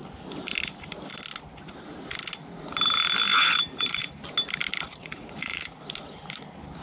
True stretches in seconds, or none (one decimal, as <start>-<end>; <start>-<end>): 0.0-3.3; 4.1-5.0; 5.8-6.8